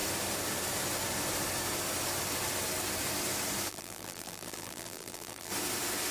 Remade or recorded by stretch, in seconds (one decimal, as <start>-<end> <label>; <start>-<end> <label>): 0.0-3.7 recorded; 3.7-5.5 remade; 5.5-6.1 recorded